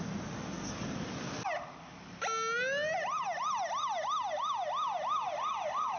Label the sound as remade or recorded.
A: recorded